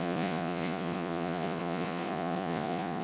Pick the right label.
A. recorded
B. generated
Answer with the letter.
B